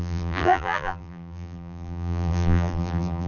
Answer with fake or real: fake